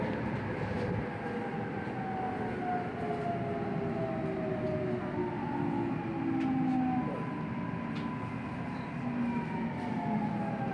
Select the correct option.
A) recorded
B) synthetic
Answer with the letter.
A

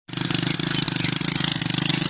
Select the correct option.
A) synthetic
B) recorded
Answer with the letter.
B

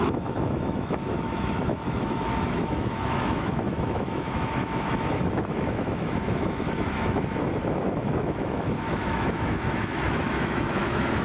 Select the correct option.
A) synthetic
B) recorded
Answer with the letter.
A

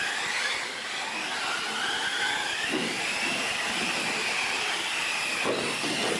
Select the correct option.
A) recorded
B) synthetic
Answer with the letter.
A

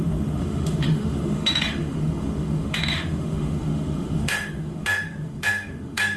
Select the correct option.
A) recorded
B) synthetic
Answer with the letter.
B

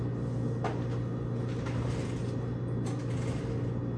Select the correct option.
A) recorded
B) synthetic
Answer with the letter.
A